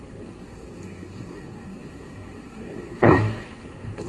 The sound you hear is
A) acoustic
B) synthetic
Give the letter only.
B